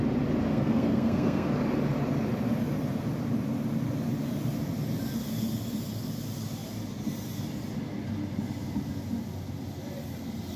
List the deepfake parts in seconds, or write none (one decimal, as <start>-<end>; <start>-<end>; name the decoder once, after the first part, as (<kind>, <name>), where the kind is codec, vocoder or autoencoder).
0.5-1.5 (codec, SNAC)